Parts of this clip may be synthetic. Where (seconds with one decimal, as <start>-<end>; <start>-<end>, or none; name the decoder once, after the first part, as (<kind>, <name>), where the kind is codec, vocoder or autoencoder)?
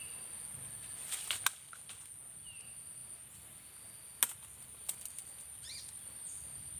none